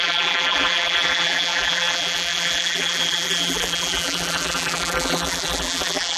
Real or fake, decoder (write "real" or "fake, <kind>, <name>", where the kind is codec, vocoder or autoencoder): fake, vocoder, BigVGAN v2